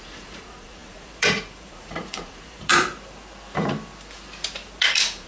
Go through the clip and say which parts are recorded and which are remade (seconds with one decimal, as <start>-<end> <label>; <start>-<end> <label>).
0.0-2.7 remade; 2.7-4.8 recorded; 4.8-5.3 remade